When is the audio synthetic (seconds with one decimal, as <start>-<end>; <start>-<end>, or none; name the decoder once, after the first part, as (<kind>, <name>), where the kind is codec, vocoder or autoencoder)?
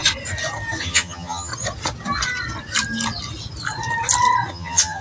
0.8-1.5 (vocoder, HiFi-GAN); 4.5-5.0